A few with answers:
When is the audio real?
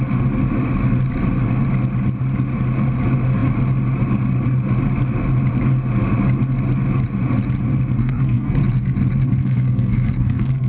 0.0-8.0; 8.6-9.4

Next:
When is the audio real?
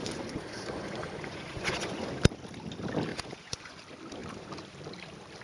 2.2-3.1; 3.8-5.4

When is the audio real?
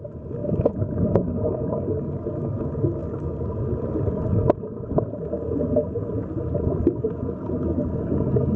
0.0-0.4; 1.9-8.6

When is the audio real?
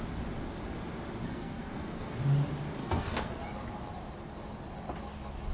0.0-1.3; 2.1-2.8; 3.3-5.5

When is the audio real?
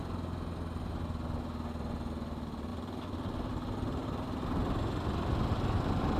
0.0-4.0; 4.8-6.2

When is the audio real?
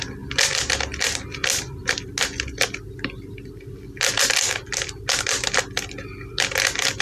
0.0-7.0